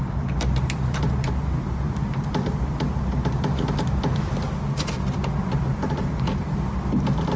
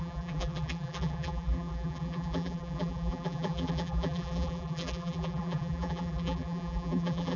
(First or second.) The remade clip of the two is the second